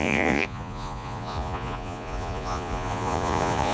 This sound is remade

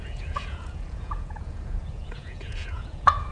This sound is remade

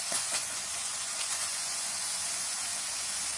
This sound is remade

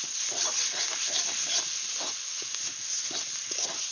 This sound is recorded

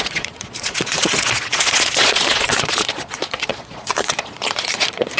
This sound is remade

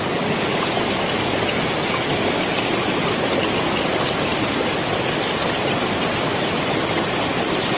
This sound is recorded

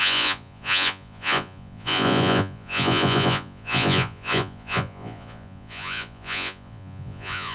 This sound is remade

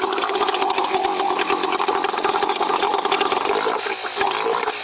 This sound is recorded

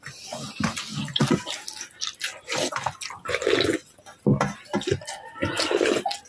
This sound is recorded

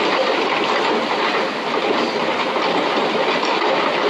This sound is recorded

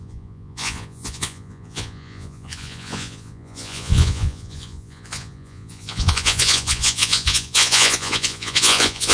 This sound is remade